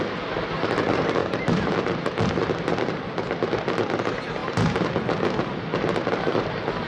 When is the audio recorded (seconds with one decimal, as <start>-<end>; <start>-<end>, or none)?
0.0-1.2; 2.3-4.4; 5.0-6.9